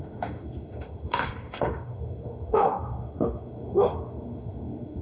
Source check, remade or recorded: remade